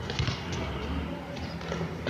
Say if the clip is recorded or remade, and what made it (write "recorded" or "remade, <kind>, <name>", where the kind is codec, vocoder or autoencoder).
recorded